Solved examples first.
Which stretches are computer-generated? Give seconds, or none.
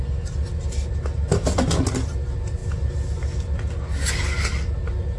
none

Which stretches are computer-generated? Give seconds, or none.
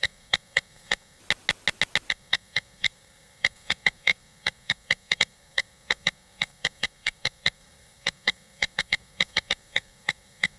0.0-1.2 (codec, SNAC); 2.1-10.6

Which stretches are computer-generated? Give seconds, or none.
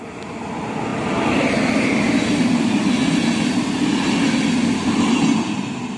none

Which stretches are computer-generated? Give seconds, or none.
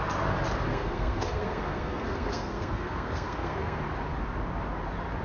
0.7-3.8 (codec, SNAC)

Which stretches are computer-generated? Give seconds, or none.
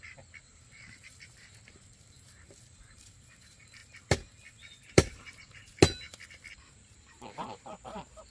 0.0-3.8 (vocoder, BigVGAN v2); 4.9-5.6; 6.7-8.3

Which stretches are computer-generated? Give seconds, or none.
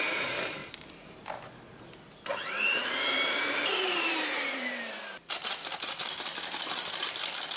0.0-0.6 (vocoder, BigVGAN v2); 2.5-5.6; 7.0-7.6